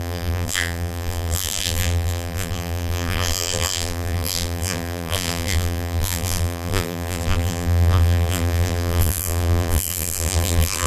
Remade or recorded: remade